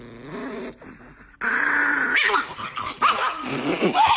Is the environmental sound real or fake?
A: real